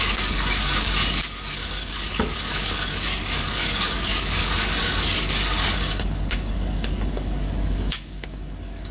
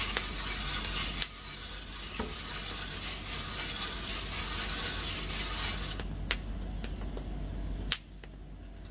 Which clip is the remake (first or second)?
first